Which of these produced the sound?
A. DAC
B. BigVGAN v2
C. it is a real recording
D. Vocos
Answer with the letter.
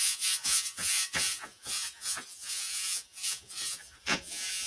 D